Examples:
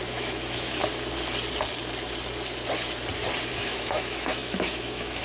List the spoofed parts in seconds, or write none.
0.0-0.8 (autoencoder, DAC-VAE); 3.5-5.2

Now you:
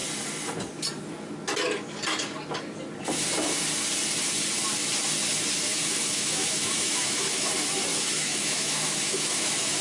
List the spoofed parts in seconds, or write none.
5.7-7.5 (autoencoder, DAC-VAE); 7.9-9.8

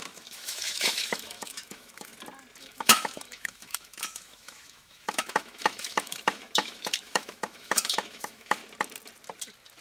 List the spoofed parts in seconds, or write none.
0.0-2.1 (autoencoder, DAC-VAE); 2.6-8.6